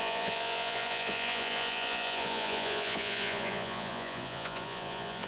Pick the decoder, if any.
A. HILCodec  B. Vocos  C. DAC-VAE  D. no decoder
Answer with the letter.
B